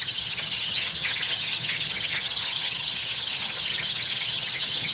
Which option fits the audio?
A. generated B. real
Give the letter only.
A